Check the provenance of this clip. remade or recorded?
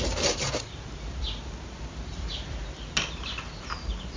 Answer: recorded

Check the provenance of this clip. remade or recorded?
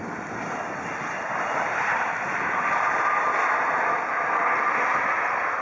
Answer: recorded